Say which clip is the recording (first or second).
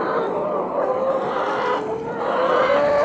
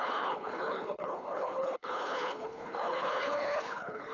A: first